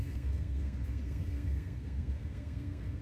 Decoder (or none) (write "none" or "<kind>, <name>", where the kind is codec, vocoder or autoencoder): codec, SNAC